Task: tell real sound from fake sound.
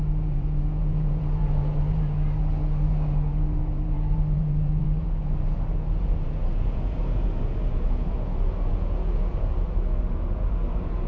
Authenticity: fake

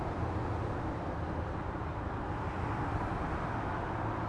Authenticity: real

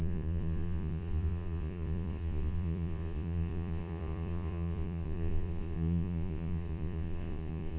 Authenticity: fake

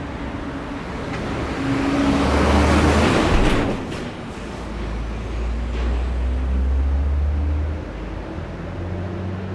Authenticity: real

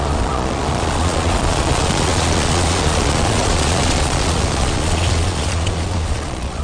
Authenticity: fake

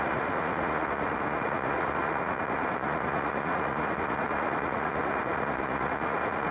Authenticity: fake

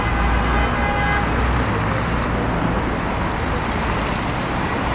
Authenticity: real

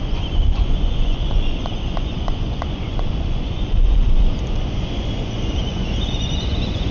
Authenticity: fake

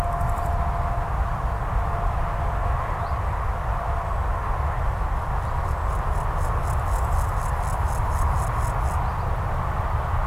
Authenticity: real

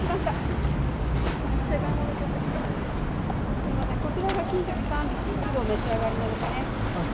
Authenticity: real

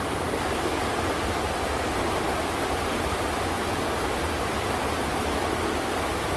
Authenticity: real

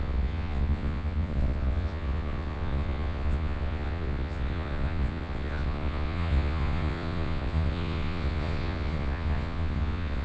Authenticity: fake